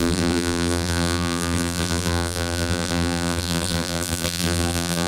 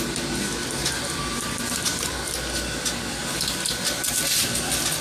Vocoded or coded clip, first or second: first